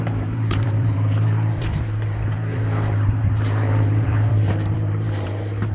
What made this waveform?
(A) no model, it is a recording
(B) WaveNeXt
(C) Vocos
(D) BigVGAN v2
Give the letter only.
D